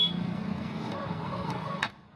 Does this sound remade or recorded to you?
remade